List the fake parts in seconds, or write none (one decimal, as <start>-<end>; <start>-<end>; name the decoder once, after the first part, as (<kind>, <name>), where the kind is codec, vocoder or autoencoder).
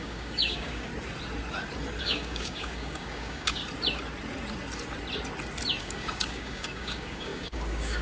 0.0-0.9 (codec, DAC); 2.0-3.6; 5.8-8.0